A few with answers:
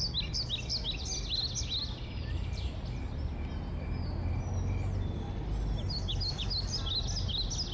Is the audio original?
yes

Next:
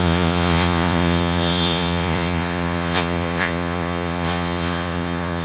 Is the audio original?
no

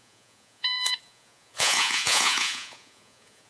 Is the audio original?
no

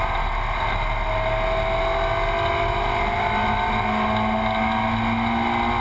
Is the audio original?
yes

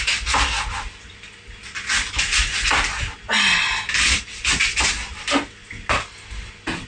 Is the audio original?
yes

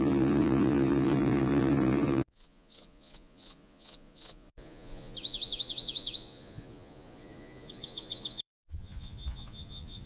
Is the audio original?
no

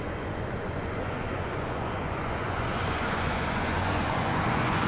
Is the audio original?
no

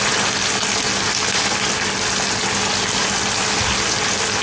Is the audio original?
yes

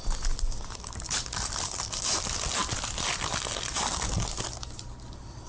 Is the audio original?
yes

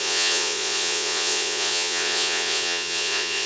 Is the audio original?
no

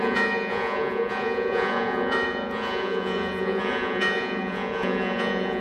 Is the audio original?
no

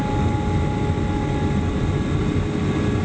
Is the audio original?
yes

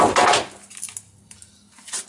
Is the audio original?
yes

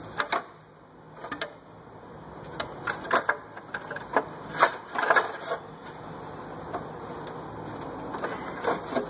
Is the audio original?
yes